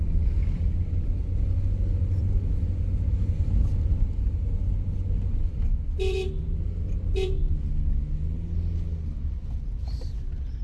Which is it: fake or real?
real